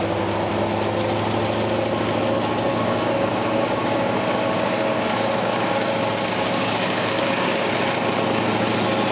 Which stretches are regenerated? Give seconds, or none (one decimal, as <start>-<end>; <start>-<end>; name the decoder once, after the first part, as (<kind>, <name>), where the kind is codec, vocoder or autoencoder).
2.7-7.7 (codec, DAC)